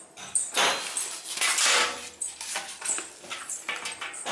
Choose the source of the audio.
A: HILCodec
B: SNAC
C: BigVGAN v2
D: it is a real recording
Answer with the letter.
D